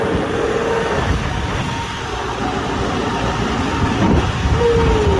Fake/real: real